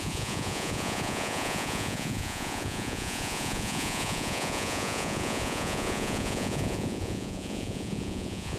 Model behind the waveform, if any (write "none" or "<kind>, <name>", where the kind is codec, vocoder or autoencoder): vocoder, Vocos